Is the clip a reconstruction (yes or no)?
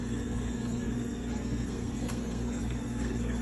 yes